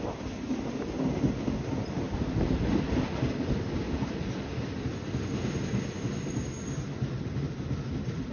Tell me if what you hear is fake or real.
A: real